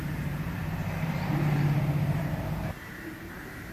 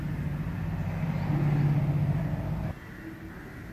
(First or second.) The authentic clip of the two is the second